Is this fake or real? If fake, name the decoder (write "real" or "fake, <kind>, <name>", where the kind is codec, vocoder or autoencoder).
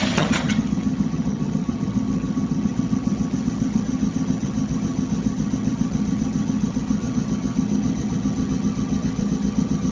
fake, vocoder, HiFi-GAN